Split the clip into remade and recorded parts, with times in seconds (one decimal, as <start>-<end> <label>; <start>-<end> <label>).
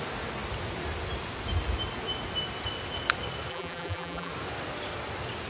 0.0-3.5 recorded; 3.5-4.3 remade; 4.3-5.5 recorded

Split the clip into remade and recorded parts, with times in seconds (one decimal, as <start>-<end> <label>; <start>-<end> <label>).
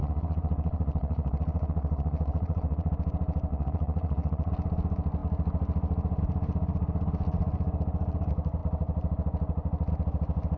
0.0-2.9 remade; 2.9-3.5 recorded; 3.5-4.5 remade; 4.5-10.6 recorded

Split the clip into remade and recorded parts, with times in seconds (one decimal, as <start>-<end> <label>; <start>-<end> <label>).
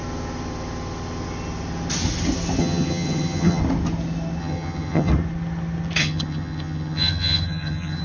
0.0-2.6 recorded; 2.6-3.6 remade; 3.6-4.4 recorded; 4.4-5.1 remade; 5.1-6.0 recorded; 6.0-8.0 remade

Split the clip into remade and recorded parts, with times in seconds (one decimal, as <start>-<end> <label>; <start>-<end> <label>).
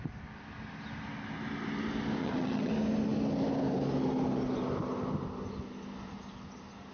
0.0-2.2 recorded; 2.2-2.7 remade; 2.7-6.9 recorded